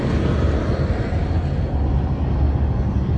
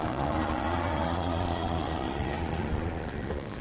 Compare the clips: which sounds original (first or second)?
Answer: first